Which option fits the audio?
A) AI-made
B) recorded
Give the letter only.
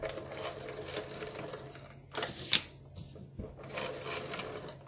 B